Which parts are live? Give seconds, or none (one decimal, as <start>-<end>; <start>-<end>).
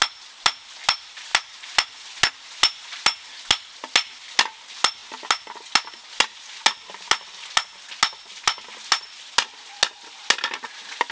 0.0-11.1